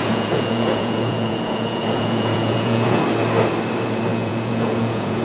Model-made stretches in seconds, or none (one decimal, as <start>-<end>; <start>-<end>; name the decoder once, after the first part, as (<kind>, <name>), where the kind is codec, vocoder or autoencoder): 0.0-3.0 (vocoder, Vocos); 4.1-5.2